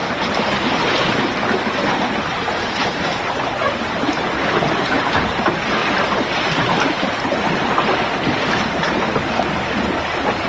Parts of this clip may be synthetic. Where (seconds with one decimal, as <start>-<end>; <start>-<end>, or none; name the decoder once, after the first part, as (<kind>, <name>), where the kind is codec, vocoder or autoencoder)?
2.8-4.8 (vocoder, BigVGAN v2); 5.8-9.0